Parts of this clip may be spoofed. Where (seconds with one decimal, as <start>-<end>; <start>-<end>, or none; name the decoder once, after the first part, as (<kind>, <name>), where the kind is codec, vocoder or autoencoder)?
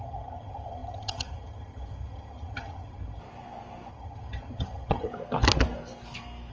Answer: 0.0-3.2 (vocoder, HiFi-GAN); 3.9-5.1